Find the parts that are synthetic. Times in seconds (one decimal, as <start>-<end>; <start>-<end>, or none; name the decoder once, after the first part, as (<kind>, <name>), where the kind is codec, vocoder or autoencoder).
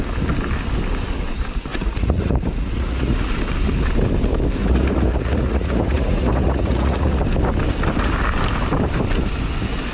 1.7-3.3 (vocoder, Vocos); 4.6-7.2